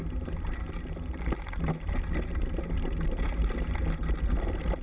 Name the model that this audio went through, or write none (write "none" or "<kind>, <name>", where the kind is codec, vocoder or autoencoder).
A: none